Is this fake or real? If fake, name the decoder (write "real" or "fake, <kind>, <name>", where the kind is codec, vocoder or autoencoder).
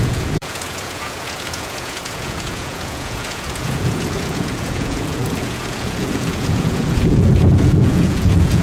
fake, vocoder, Vocos